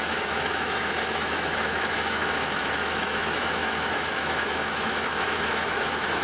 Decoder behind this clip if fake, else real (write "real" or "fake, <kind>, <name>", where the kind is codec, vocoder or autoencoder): fake, autoencoder, DAC-VAE